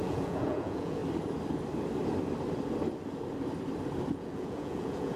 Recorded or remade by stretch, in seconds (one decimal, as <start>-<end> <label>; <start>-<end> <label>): 0.0-1.0 remade; 1.0-4.1 recorded; 4.1-5.2 remade